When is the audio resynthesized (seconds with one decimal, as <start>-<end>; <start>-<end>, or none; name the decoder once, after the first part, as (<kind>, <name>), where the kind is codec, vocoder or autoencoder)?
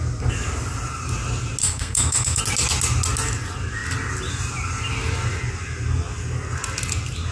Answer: 1.6-2.4 (codec, SNAC)